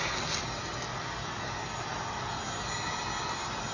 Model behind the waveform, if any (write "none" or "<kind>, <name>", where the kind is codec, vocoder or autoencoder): none